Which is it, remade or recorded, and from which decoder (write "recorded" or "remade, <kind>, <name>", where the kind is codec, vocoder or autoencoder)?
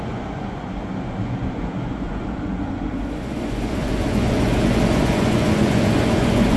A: remade, vocoder, Vocos